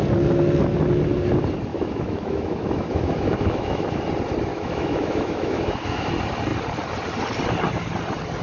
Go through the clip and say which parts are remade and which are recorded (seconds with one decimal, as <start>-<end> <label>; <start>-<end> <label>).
0.0-1.7 recorded; 1.7-4.0 remade; 4.0-4.5 recorded; 4.5-6.1 remade; 6.1-8.4 recorded